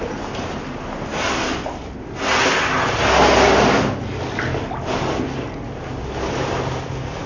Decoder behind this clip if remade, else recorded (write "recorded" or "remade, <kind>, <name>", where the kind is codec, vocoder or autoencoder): recorded